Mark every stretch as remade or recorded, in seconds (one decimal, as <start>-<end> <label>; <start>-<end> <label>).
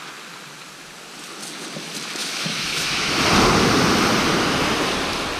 0.0-2.2 recorded; 2.2-3.1 remade; 3.1-5.4 recorded